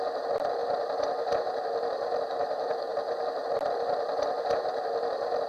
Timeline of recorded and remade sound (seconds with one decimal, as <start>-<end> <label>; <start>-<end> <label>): 0.0-5.5 recorded